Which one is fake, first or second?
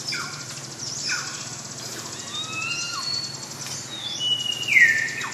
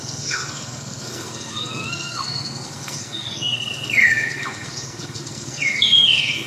second